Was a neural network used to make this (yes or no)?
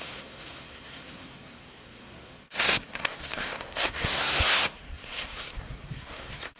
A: yes